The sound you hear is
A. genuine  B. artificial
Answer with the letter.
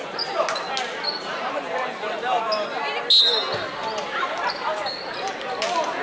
A